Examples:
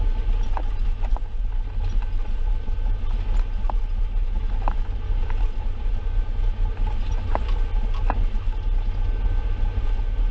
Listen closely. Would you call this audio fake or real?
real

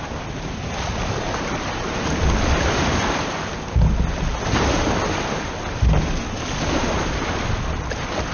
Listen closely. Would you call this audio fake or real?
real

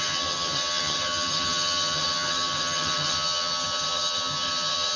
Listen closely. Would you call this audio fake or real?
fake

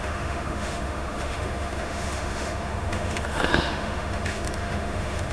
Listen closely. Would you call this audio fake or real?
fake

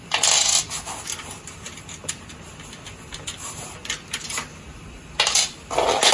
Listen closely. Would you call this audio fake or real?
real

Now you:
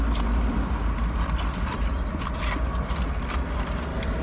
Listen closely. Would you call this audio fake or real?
real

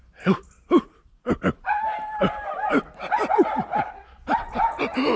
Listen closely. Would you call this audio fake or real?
real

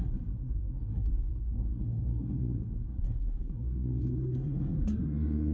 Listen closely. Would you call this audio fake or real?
fake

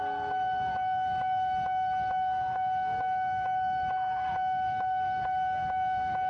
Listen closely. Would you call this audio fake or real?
fake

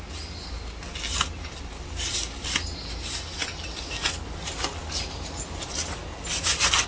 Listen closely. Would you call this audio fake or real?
real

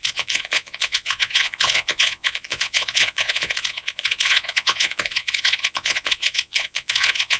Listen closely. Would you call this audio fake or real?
fake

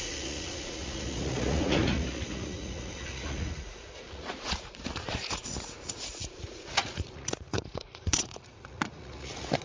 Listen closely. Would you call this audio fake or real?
fake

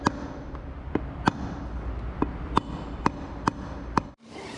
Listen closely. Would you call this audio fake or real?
real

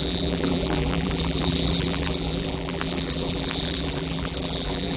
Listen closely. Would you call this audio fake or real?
fake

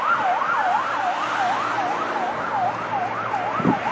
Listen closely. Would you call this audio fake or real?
real